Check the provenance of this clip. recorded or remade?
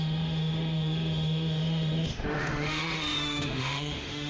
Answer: remade